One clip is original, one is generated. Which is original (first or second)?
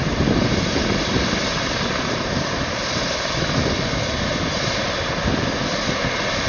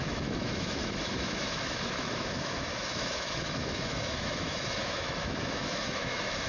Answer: first